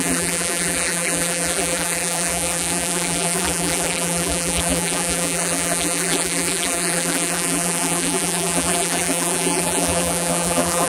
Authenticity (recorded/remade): remade